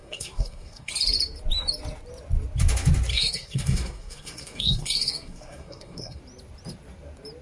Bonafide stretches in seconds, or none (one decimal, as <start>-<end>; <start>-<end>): 0.9-3.1; 6.2-7.4